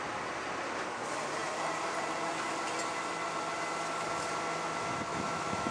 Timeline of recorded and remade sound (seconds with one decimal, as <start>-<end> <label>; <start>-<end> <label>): 0.0-5.1 recorded; 5.1-5.7 remade